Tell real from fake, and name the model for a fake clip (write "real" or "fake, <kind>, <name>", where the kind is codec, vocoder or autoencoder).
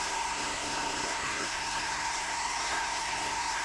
fake, codec, SNAC